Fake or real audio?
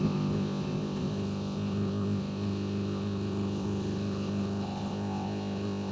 fake